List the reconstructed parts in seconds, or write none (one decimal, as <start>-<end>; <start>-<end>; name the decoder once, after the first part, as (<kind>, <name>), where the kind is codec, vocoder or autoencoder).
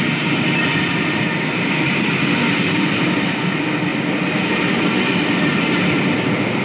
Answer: none